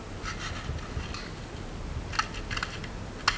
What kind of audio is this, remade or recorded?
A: recorded